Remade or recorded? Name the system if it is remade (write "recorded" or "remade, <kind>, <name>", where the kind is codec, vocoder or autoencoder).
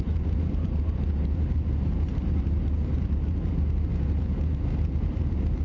remade, vocoder, BigVGAN v2